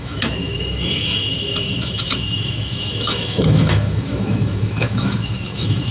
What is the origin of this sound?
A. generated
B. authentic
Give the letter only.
A